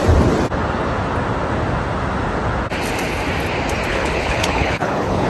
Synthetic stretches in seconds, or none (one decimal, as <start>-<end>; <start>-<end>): 3.9-5.3

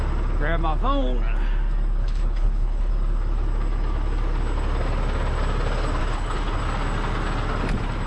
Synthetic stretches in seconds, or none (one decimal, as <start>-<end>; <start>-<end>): 2.0-2.9; 6.0-6.6

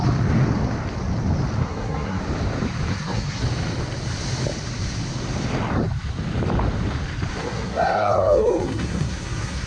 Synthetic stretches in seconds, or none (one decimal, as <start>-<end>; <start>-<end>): 1.6-2.2; 2.9-3.4; 7.4-9.7

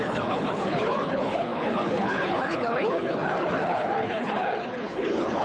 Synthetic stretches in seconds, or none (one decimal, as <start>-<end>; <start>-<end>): 0.0-5.4